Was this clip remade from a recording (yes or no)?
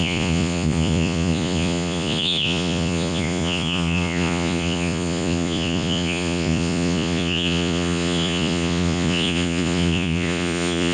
yes